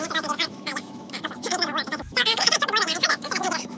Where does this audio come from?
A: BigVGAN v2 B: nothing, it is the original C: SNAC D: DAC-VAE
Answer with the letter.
D